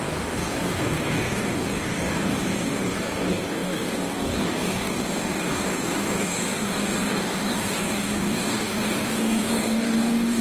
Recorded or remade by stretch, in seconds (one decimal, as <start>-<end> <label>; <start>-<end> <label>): 0.0-10.4 remade